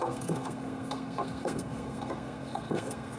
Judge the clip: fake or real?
fake